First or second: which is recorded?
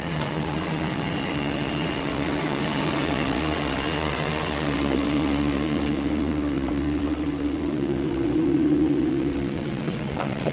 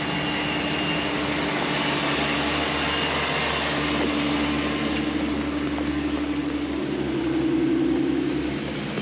second